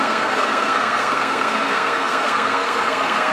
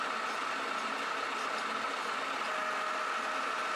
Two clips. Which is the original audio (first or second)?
second